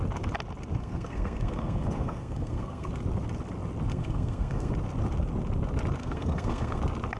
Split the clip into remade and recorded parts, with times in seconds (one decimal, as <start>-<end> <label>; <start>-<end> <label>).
0.0-0.8 recorded; 0.8-2.9 remade; 2.9-3.9 recorded; 3.9-4.7 remade; 4.7-6.0 recorded; 6.0-6.8 remade; 6.8-7.2 recorded